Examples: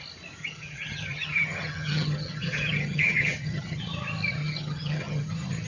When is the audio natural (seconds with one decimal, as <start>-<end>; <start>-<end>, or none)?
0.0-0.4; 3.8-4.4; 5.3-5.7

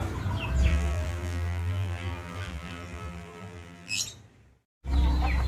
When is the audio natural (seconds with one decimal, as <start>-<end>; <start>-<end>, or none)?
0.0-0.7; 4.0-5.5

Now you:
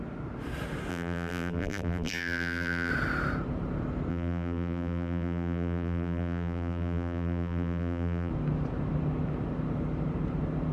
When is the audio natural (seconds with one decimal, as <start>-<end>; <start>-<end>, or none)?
0.0-0.9; 2.9-4.1; 8.3-10.7

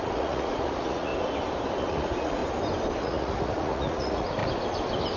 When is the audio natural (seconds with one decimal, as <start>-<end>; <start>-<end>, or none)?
1.1-1.8; 2.4-3.0; 4.4-5.2

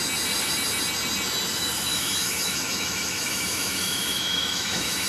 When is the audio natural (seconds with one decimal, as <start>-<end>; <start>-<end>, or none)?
0.0-1.9